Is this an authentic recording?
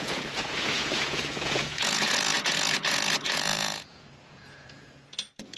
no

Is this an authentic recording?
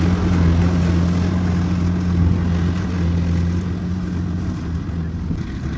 yes